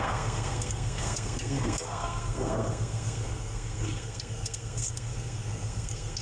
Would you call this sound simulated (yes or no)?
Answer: yes